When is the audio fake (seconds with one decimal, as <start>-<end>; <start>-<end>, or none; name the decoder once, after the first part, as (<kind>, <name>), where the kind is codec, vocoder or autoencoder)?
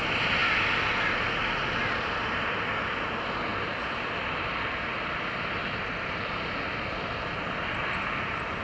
none